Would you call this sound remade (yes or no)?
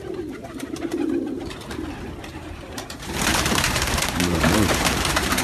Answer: yes